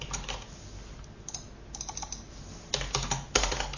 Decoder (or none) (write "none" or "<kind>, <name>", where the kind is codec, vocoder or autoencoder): none